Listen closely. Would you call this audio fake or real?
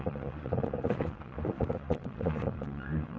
fake